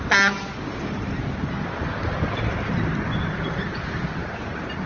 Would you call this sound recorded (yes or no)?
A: yes